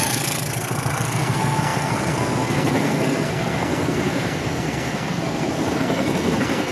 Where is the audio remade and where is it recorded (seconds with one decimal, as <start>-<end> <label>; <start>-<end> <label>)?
0.0-6.7 remade